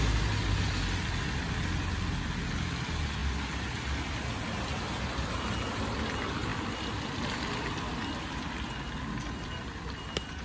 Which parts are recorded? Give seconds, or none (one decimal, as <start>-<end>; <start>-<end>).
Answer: 0.0-6.5; 8.9-10.4